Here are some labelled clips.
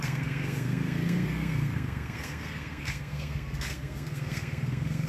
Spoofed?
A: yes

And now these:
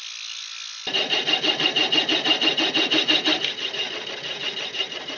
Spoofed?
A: no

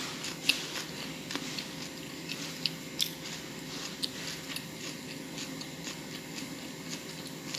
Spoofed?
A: no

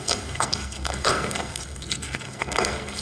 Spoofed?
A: yes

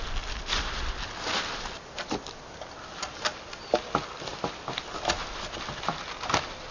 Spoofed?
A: no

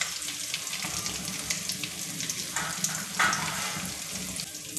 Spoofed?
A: no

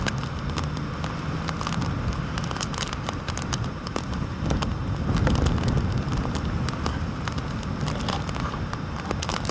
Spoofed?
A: no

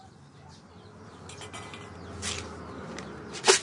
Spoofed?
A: no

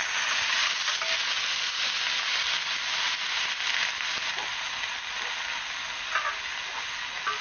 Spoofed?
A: no